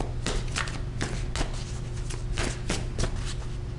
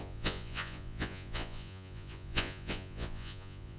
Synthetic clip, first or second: second